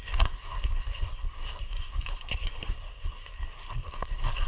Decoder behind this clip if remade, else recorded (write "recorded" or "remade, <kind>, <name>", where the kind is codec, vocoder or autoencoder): remade, codec, SNAC